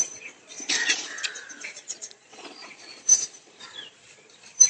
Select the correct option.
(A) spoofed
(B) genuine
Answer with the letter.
A